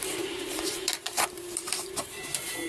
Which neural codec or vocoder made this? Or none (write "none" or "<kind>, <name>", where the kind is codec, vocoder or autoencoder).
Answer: vocoder, BigVGAN v2